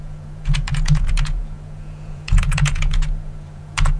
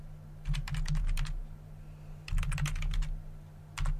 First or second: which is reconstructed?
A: first